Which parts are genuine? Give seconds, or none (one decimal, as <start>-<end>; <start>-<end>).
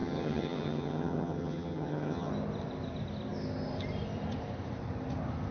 2.3-5.5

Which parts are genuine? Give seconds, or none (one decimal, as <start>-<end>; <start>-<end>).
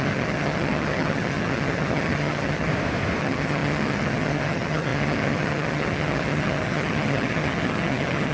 2.7-3.2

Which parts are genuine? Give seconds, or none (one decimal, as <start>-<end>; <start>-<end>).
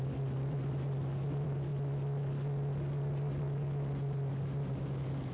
0.0-5.3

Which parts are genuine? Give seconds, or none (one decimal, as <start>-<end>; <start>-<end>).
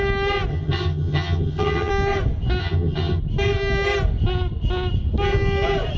0.0-0.5; 1.9-2.6; 3.2-6.0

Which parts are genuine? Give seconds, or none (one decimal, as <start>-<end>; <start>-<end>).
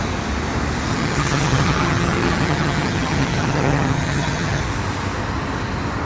0.0-0.9; 4.6-6.1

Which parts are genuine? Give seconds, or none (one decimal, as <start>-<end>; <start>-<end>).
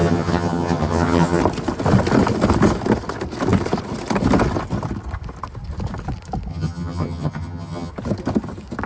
1.4-6.5; 7.9-8.9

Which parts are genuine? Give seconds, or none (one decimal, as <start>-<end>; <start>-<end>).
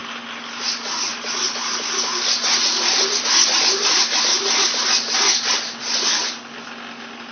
0.0-7.3